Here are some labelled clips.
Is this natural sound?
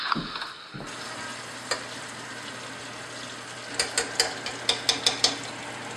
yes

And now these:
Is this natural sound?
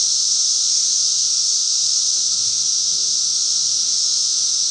no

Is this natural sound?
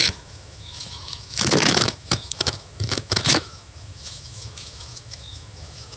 no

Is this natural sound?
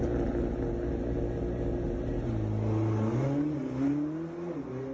yes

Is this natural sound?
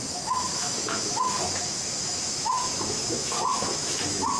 no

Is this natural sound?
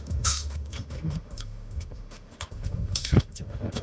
no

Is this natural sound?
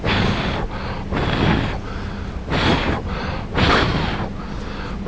yes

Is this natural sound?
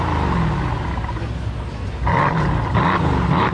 yes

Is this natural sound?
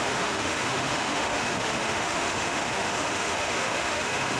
no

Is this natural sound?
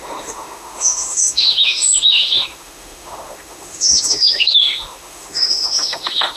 no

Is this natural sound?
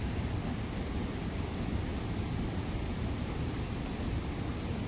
yes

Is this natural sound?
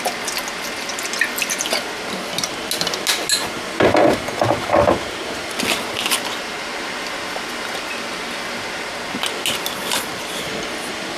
yes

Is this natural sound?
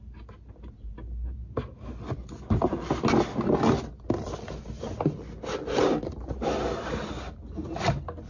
yes